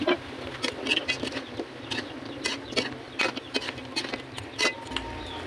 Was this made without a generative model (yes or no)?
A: yes